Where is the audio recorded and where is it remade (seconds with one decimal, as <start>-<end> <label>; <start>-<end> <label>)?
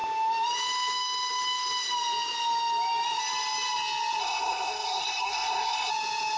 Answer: 0.0-4.2 recorded; 4.2-5.9 remade; 5.9-6.4 recorded